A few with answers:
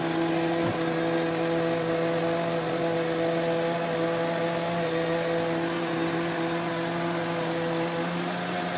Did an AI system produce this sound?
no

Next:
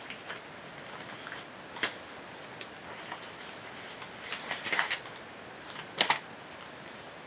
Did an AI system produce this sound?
no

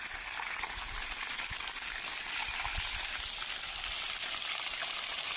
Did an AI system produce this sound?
no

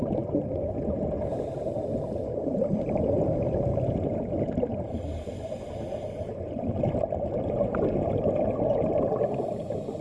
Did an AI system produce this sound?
yes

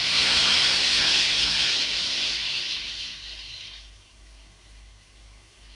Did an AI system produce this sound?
yes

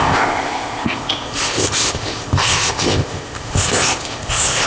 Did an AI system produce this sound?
yes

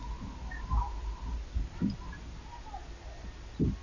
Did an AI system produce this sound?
no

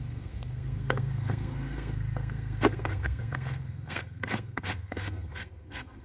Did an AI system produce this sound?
yes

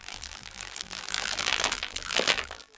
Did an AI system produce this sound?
yes